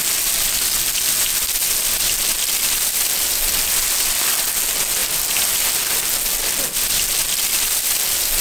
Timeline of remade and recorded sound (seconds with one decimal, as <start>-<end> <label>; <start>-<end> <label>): 0.0-8.4 recorded